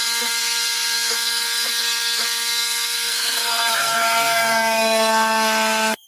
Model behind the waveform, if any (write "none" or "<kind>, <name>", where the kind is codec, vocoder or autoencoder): codec, SNAC